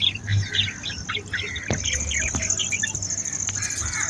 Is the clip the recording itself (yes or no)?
yes